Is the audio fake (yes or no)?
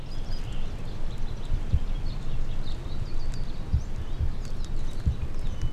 no